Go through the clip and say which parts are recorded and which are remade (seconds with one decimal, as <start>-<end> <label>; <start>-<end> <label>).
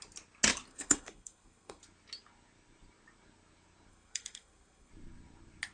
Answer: 0.0-0.7 recorded; 0.7-1.8 remade; 1.8-3.9 recorded; 3.9-4.9 remade; 4.9-5.7 recorded